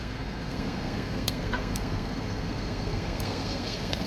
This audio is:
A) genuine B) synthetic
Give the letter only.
B